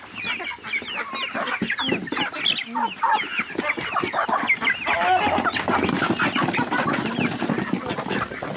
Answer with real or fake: real